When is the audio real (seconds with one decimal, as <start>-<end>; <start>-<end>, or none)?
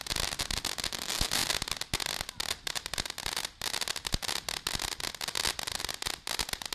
0.0-6.7